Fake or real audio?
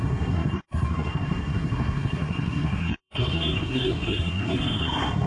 fake